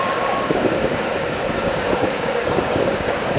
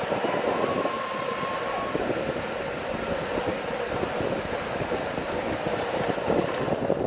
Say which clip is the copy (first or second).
first